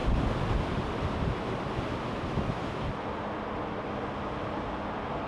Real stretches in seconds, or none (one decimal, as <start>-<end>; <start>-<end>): 0.0-5.3